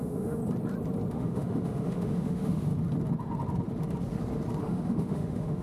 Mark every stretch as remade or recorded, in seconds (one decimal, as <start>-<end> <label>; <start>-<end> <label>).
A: 0.0-0.4 remade; 0.4-1.1 recorded; 1.1-2.7 remade; 2.7-4.6 recorded; 4.6-5.6 remade